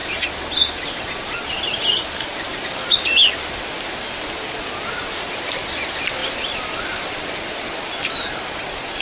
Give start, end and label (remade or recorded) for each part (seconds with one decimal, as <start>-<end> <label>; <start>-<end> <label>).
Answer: 0.0-9.0 recorded